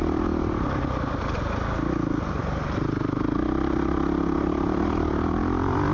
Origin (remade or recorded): recorded